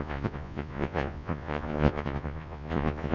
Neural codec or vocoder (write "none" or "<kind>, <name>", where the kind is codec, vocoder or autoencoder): vocoder, Vocos